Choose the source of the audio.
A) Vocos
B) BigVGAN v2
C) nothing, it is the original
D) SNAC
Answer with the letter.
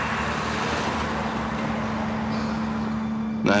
C